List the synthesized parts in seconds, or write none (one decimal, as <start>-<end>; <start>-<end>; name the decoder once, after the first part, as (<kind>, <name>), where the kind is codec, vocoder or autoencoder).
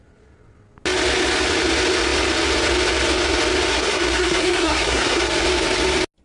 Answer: 3.7-5.3 (codec, SNAC)